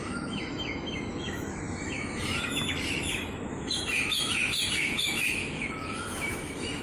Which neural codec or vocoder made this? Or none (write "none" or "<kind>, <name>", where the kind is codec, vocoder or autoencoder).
autoencoder, DAC-VAE